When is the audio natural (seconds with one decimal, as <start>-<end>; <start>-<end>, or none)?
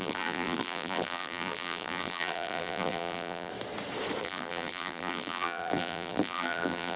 3.5-4.2